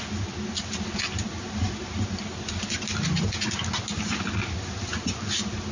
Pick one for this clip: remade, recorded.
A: recorded